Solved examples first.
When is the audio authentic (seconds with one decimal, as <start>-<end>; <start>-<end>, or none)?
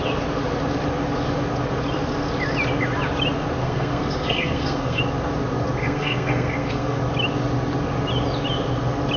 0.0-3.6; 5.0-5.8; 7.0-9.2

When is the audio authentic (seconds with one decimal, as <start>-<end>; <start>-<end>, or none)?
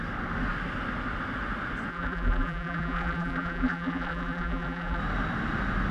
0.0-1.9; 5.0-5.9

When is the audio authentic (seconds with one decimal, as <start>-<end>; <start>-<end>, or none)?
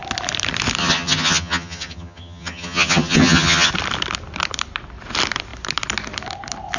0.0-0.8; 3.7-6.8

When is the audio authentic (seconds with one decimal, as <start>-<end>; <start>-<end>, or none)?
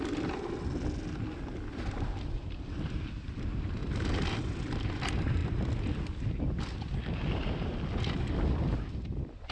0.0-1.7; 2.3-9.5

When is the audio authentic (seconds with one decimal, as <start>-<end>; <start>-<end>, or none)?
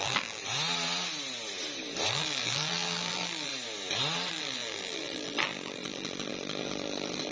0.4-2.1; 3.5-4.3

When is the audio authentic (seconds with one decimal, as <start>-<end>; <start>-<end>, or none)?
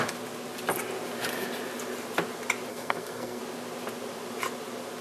0.0-2.7; 3.4-5.0